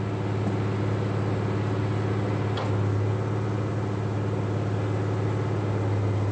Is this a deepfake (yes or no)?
no